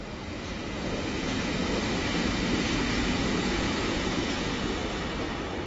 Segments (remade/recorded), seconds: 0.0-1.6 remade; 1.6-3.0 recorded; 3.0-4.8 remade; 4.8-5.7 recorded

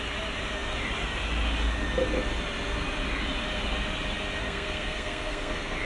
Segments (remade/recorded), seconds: 0.0-4.4 recorded; 4.4-5.8 remade